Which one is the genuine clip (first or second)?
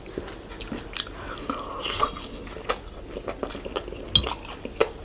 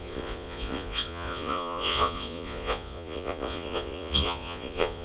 first